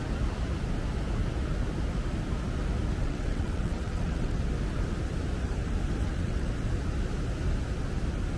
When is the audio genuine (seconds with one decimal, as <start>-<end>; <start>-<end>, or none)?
0.0-3.0; 4.4-6.0; 6.5-8.4